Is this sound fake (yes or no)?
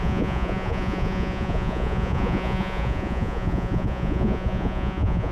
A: yes